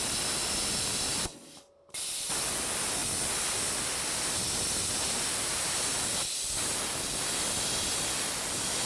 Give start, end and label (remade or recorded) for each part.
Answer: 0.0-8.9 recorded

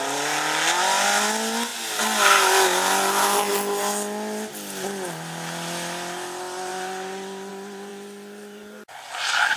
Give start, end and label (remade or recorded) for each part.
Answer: 0.0-6.7 recorded; 6.7-7.5 remade; 7.5-7.9 recorded; 7.9-9.1 remade; 9.1-9.6 recorded

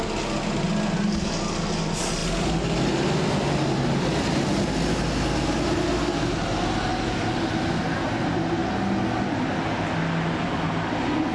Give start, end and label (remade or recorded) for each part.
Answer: 0.0-11.3 recorded

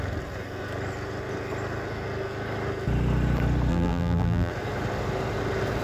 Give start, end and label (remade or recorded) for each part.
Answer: 0.0-3.7 recorded; 3.7-4.5 remade; 4.5-5.8 recorded

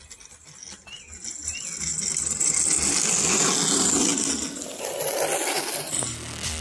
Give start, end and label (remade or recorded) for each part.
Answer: 0.0-1.9 recorded; 1.9-2.5 remade; 2.5-6.6 recorded